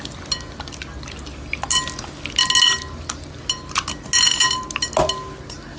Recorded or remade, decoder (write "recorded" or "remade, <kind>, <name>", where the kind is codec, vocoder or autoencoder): recorded